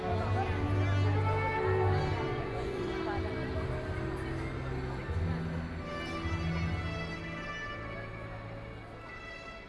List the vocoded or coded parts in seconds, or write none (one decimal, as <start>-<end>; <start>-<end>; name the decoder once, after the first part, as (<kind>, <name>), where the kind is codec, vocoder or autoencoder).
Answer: 2.3-2.9 (vocoder, Vocos)

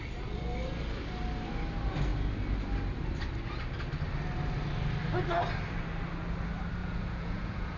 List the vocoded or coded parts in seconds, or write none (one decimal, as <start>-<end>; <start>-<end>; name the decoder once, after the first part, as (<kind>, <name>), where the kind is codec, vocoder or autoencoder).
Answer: 6.8-7.8 (vocoder, Vocos)

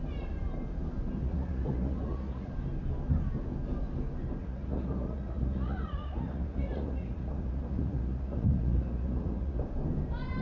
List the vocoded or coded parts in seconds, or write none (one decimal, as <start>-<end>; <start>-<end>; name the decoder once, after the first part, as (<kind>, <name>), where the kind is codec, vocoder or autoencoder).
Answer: 1.2-2.5 (vocoder, Vocos); 4.4-9.6

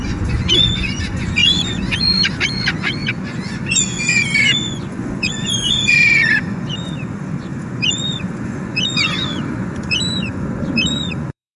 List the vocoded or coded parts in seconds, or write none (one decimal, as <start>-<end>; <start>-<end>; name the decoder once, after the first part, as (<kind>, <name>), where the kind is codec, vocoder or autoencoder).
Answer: 0.0-11.6 (vocoder, Vocos)

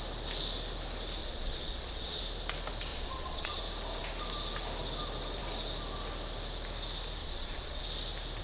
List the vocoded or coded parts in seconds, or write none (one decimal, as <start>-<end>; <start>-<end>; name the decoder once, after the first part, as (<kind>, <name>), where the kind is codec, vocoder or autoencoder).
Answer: 1.2-2.2 (vocoder, Vocos); 2.9-3.6; 7.2-7.8

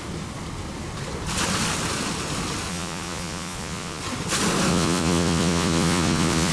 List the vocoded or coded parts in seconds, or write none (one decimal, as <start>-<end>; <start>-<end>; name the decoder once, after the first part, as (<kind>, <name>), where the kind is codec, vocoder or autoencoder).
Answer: 2.7-4.0 (vocoder, Vocos); 4.7-6.5

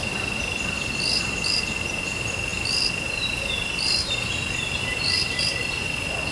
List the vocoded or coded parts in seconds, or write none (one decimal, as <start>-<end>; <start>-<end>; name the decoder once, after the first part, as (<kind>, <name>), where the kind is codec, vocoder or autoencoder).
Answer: none